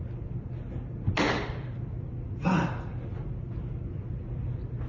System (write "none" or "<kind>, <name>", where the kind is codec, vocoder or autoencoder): none